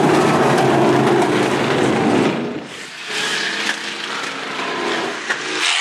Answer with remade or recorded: recorded